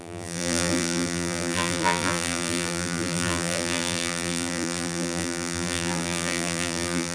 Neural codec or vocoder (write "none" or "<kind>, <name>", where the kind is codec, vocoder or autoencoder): vocoder, BigVGAN v2